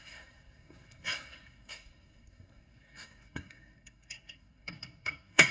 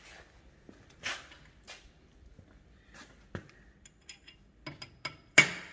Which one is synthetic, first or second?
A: first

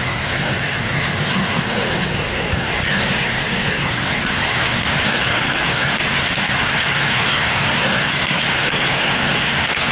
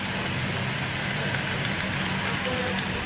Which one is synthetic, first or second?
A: first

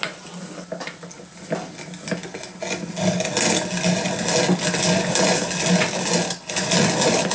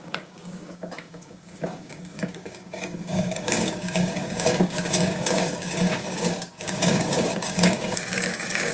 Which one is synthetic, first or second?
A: second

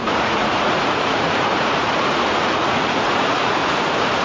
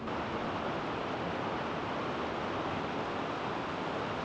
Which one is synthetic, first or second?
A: first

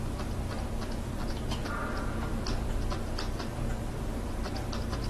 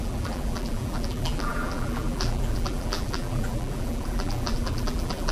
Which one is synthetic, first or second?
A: second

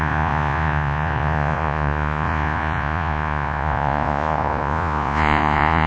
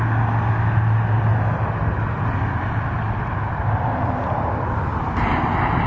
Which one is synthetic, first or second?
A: first